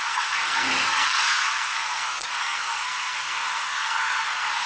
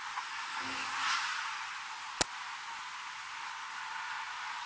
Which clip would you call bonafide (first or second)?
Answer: second